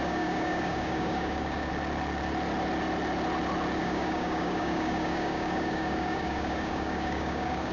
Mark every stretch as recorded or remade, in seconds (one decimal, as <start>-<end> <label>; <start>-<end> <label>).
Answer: 0.0-1.7 remade; 1.7-3.8 recorded; 3.8-7.7 remade